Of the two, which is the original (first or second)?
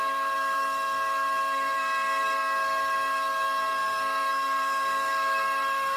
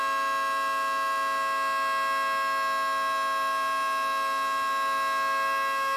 second